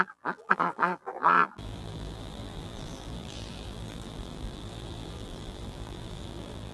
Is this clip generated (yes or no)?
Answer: yes